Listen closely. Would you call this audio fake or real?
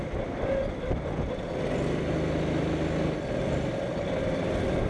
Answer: real